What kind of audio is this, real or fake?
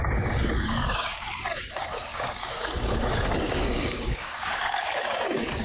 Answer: fake